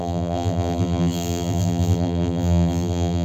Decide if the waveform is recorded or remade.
remade